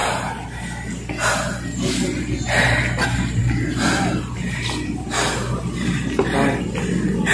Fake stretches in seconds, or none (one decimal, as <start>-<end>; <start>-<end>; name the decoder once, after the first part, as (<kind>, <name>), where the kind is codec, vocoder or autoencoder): 0.0-0.6 (vocoder, BigVGAN v2)